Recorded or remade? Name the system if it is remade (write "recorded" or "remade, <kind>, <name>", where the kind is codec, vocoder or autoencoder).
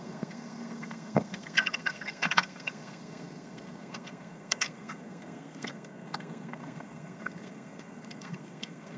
remade, codec, SNAC